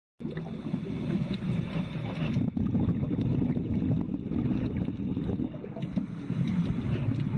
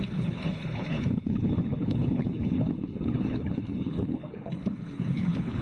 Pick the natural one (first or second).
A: first